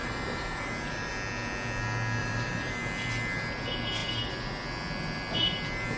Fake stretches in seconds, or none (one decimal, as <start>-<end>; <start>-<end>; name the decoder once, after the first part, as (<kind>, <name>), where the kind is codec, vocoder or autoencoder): 0.0-1.1 (vocoder, BigVGAN v2); 2.2-2.7